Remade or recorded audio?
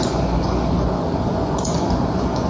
remade